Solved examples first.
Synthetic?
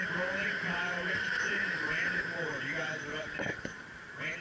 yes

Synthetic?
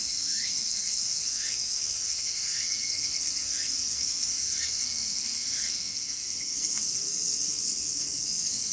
yes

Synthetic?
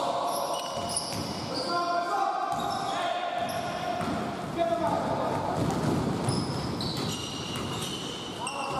no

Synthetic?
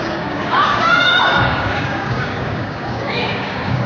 yes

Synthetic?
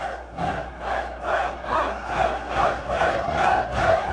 yes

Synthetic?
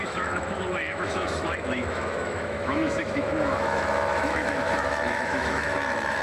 yes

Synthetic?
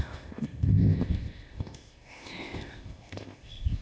yes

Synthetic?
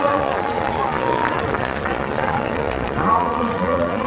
yes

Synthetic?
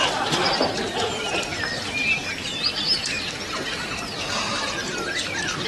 yes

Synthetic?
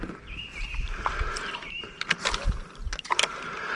yes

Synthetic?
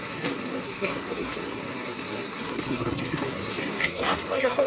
yes